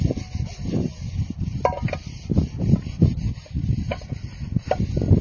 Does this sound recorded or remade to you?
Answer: recorded